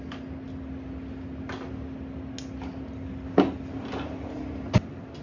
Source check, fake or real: real